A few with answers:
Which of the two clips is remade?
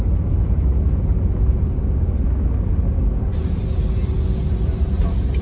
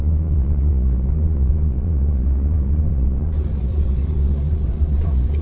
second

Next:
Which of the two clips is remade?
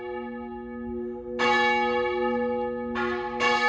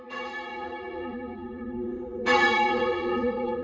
second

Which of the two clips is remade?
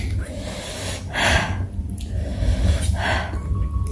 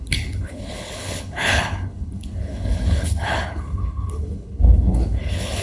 second